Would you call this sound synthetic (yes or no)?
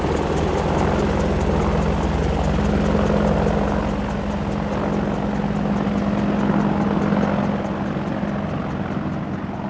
no